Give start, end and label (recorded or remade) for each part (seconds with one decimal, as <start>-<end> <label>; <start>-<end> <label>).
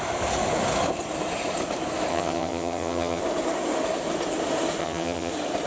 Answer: 0.0-2.1 recorded; 2.1-3.2 remade; 3.2-4.8 recorded; 4.8-5.3 remade; 5.3-5.7 recorded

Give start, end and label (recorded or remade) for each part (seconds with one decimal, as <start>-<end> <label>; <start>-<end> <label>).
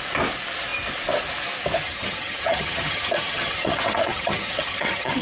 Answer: 0.0-1.8 recorded; 1.8-5.2 remade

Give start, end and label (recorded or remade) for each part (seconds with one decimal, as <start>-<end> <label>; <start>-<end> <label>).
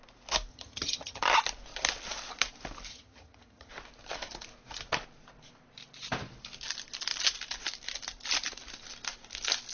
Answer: 0.0-0.5 recorded; 0.5-1.2 remade; 1.2-2.9 recorded; 2.9-3.7 remade; 3.7-9.7 recorded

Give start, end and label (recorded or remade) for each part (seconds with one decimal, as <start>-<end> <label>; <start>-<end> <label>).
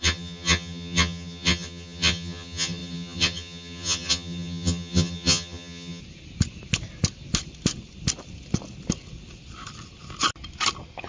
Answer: 0.0-6.0 remade; 6.0-11.1 recorded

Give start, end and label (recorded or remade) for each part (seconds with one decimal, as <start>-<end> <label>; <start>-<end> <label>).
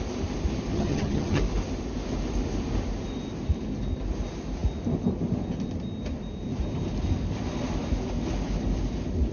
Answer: 0.0-0.7 recorded; 0.7-1.4 remade; 1.4-9.3 recorded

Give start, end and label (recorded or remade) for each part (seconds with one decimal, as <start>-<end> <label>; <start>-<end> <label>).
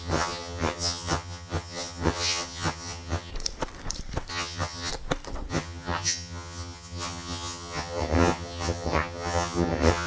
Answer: 0.0-3.3 remade; 3.3-4.3 recorded; 4.3-4.9 remade; 4.9-5.5 recorded; 5.5-10.1 remade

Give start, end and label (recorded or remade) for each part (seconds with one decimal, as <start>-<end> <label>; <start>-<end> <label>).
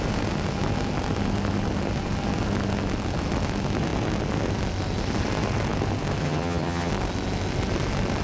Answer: 0.0-6.2 recorded; 6.2-6.9 remade; 6.9-8.2 recorded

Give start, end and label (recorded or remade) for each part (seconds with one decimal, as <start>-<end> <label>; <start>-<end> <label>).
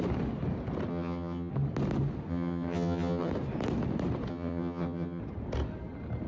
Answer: 0.0-0.9 recorded; 0.9-1.5 remade; 1.5-2.3 recorded; 2.3-3.3 remade; 3.3-4.3 recorded; 4.3-5.2 remade; 5.2-6.3 recorded